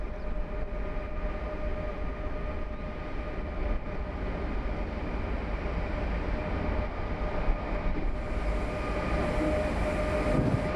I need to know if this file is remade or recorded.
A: recorded